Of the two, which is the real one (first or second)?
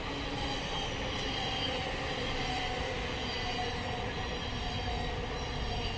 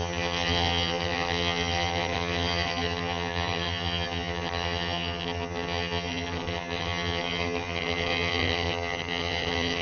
first